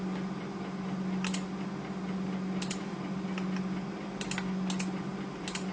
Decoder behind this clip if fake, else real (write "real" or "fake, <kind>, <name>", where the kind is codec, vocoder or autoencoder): real